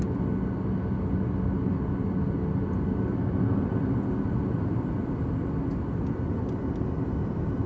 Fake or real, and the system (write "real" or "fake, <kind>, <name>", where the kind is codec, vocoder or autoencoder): real